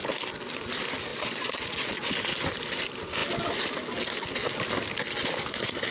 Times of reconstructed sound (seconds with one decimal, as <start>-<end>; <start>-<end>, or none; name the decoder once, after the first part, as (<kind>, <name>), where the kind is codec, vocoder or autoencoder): 1.1-2.1 (vocoder, Vocos)